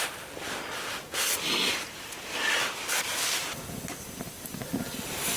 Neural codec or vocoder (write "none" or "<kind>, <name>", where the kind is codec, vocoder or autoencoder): none